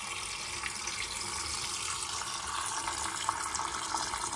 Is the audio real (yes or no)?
yes